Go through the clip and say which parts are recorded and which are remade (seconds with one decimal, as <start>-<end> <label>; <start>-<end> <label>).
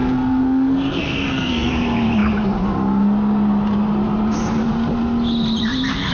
0.0-1.7 remade; 1.7-6.1 recorded